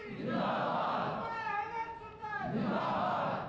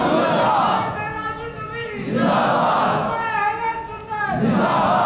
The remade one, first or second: first